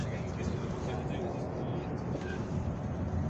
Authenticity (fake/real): real